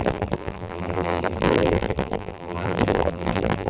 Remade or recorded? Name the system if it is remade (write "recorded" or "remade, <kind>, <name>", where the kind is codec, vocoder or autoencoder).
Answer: remade, vocoder, BigVGAN v2